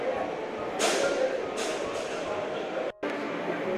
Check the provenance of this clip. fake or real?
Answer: real